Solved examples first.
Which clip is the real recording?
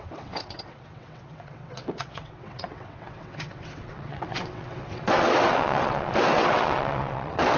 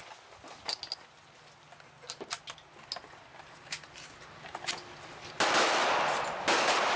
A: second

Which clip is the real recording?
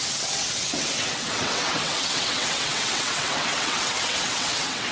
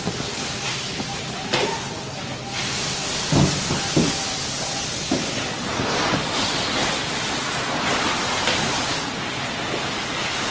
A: second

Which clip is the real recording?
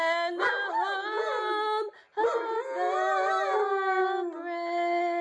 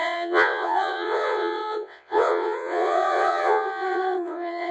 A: first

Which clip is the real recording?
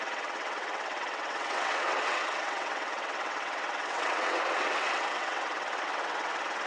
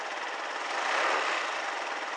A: second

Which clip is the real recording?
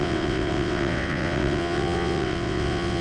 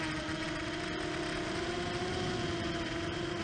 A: second